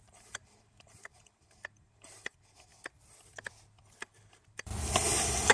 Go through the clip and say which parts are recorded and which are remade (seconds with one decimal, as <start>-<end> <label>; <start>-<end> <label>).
0.0-2.7 remade; 2.7-4.0 recorded; 4.0-4.7 remade; 4.7-5.5 recorded